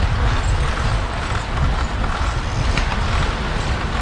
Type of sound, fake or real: real